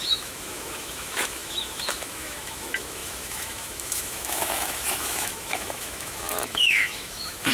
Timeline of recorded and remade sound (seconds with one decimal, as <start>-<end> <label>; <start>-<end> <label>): 0.0-7.5 remade